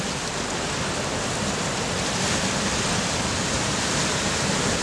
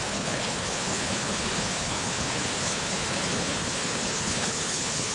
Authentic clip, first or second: first